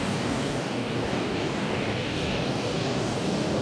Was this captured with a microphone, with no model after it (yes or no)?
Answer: no